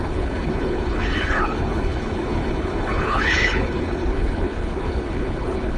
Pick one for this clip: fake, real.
fake